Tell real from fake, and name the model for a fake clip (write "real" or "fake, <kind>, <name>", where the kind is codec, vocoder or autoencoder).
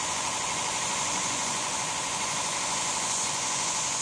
fake, vocoder, Vocos